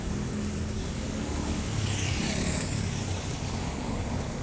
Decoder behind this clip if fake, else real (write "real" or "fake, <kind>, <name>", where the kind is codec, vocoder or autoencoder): fake, codec, DAC